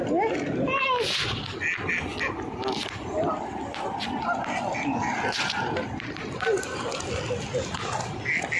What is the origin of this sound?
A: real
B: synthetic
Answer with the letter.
A